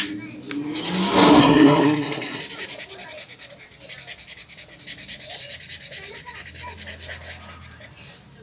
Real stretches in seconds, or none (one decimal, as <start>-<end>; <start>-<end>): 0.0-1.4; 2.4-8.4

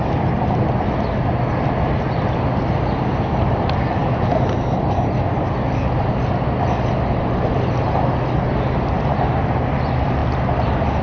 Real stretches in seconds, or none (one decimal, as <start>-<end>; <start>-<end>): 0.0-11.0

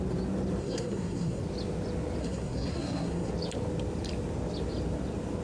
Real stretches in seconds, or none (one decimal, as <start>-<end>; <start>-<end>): 0.0-0.6; 1.4-2.2; 3.3-5.4

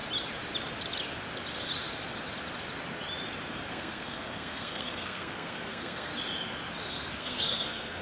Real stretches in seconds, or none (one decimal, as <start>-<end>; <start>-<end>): 0.0-3.7; 6.1-6.9

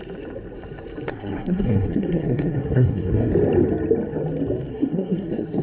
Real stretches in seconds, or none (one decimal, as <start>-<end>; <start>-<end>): 0.0-1.1; 3.3-4.7

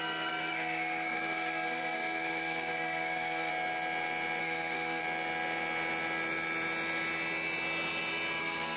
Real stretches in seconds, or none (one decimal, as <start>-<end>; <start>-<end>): 3.5-4.4; 5.0-8.4

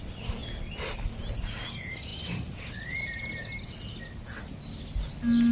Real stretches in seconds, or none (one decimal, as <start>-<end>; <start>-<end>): 0.0-5.5